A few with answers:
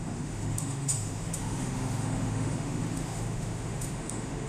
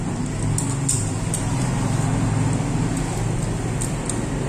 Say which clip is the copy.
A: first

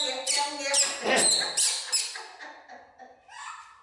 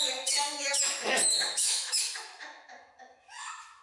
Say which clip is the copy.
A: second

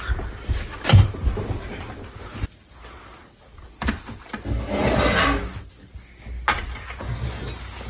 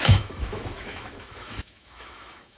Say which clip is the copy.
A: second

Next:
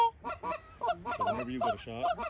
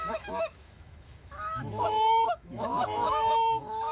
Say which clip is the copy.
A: second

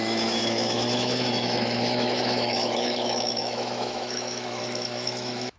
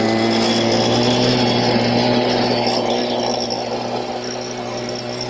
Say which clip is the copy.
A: first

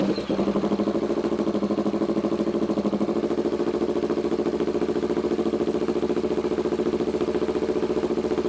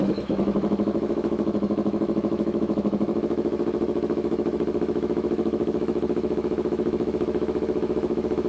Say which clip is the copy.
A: second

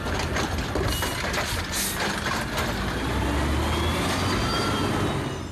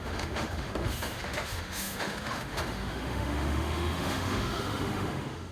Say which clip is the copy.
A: second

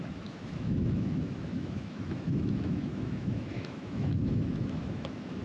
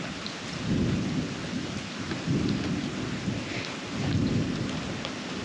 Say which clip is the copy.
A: first